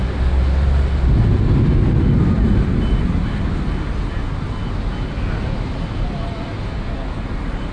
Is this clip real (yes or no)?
yes